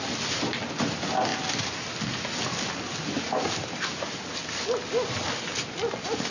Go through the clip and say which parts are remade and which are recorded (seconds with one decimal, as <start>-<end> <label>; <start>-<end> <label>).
0.0-6.3 recorded